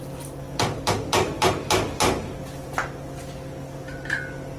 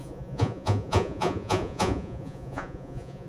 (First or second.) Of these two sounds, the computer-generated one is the second